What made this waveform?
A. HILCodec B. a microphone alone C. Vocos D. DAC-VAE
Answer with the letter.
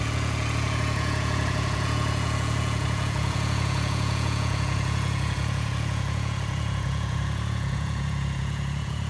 C